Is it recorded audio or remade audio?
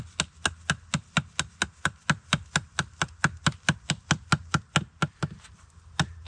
recorded